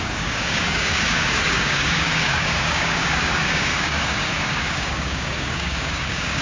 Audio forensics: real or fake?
fake